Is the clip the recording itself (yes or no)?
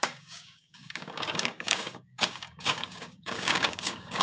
no